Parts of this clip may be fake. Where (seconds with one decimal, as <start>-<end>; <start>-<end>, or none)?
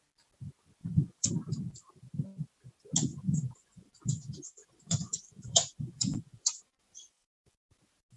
0.8-1.3; 3.1-7.5